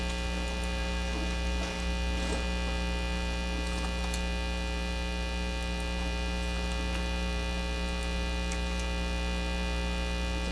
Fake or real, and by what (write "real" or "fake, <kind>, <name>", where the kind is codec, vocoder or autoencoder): real